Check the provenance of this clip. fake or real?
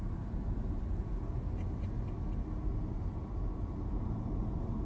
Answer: real